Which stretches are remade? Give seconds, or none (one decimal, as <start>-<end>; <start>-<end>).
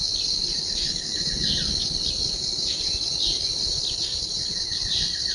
none